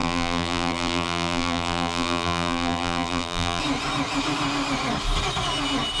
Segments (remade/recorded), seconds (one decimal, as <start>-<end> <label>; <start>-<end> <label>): 0.0-3.6 remade; 3.6-6.0 recorded